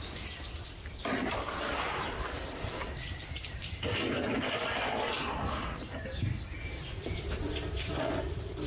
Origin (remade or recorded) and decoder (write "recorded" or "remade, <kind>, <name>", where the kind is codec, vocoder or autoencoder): remade, vocoder, BigVGAN v2